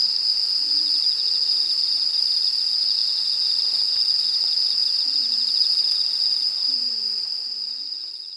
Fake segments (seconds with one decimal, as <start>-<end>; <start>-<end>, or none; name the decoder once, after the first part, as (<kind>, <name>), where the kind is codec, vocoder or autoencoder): 0.0-8.4 (vocoder, Vocos)